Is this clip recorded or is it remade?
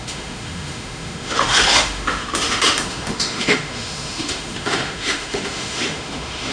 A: remade